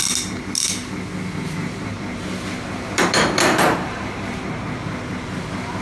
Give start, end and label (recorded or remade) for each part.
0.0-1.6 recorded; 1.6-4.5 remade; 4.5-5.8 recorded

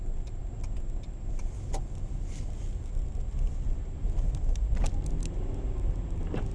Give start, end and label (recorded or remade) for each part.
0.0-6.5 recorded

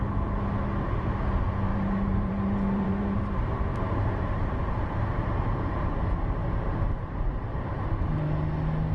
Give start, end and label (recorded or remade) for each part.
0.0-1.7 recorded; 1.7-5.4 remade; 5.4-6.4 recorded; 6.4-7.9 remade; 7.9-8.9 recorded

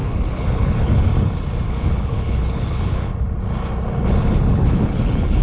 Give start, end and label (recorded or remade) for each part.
0.0-1.1 remade; 1.1-1.7 recorded; 1.7-3.1 remade; 3.1-4.5 recorded; 4.5-5.4 remade

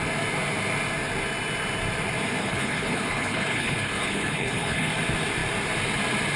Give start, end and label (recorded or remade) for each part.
0.0-2.4 recorded; 2.4-4.9 remade; 4.9-6.4 recorded

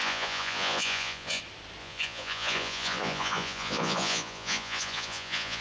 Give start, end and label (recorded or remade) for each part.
0.0-1.4 remade; 1.4-1.8 recorded; 1.8-5.6 remade

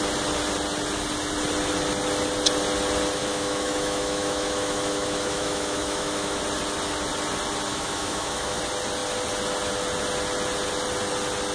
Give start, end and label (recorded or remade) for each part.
0.0-3.2 recorded; 3.2-6.4 remade; 6.4-7.7 recorded; 7.7-8.6 remade; 8.6-11.5 recorded

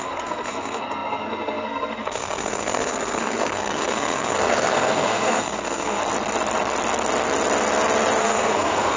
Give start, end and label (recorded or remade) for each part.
0.0-6.0 remade; 6.0-8.2 recorded; 8.2-9.0 remade